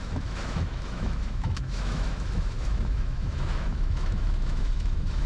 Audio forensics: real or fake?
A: fake